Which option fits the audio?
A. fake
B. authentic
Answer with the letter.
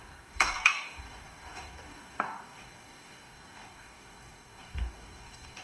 A